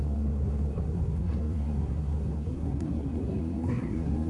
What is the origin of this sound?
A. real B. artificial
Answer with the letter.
B